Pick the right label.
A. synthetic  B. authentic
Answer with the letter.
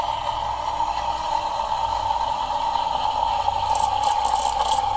B